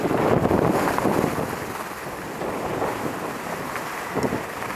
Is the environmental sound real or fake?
real